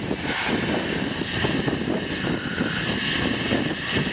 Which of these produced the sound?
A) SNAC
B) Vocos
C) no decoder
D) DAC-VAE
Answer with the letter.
C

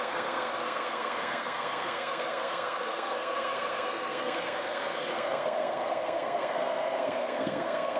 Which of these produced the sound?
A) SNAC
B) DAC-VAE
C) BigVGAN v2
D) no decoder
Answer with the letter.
A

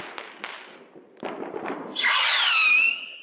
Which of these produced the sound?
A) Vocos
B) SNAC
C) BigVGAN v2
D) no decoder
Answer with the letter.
D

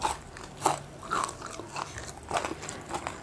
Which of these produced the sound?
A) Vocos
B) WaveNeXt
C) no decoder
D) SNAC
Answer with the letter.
C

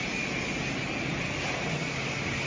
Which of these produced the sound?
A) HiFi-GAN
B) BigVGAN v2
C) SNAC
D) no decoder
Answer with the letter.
D